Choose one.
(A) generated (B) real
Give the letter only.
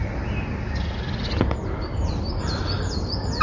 B